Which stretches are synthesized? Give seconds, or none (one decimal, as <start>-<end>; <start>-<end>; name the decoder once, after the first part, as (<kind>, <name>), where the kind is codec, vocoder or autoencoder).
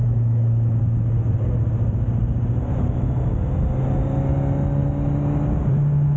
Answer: 0.0-0.8 (autoencoder, DAC-VAE)